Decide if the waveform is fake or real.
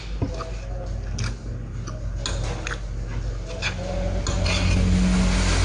real